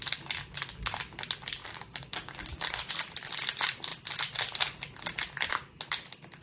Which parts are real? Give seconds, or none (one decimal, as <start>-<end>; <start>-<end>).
0.0-1.6; 2.9-6.4